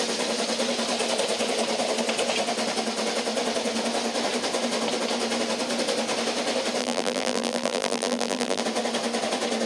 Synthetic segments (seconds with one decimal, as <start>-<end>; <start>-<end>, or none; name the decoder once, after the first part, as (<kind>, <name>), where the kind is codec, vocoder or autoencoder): 6.8-8.6 (vocoder, BigVGAN v2)